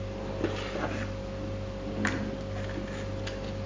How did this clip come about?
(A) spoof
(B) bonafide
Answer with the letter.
B